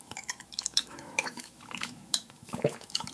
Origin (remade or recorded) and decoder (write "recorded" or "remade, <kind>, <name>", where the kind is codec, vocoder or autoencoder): remade, autoencoder, DAC-VAE